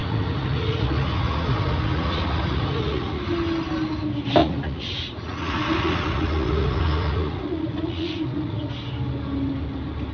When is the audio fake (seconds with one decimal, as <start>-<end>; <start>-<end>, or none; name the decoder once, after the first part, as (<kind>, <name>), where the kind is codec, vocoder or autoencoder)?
0.0-3.2 (vocoder, Vocos); 4.4-8.7